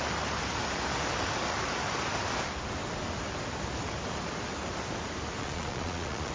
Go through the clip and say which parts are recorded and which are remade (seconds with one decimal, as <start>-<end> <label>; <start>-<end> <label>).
0.0-5.4 recorded; 5.4-6.3 remade